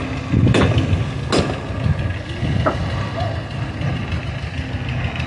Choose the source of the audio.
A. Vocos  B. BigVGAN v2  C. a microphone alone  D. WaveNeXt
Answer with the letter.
C